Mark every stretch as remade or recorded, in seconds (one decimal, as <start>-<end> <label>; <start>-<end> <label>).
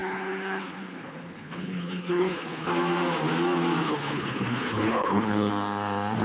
0.0-2.7 remade; 2.7-3.8 recorded; 3.8-5.5 remade; 5.5-6.2 recorded